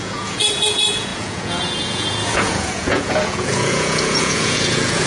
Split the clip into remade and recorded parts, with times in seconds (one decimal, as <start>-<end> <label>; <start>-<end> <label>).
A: 0.0-5.1 remade